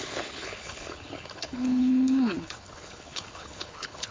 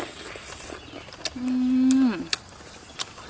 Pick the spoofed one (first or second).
first